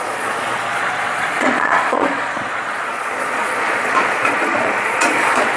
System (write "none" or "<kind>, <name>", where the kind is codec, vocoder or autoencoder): vocoder, Vocos